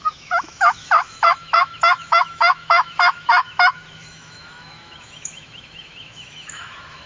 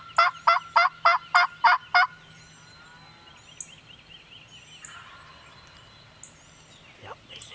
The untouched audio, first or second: second